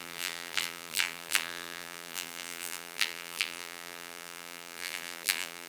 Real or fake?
fake